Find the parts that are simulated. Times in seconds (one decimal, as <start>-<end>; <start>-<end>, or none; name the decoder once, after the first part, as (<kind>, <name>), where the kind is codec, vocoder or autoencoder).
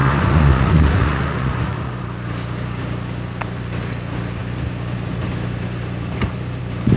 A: 0.0-2.0 (vocoder, Vocos)